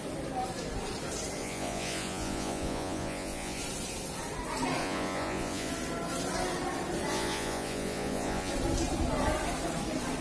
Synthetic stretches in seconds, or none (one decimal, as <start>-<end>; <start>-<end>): 1.4-3.6; 4.8-5.7; 7.1-8.5